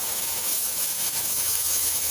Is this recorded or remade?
remade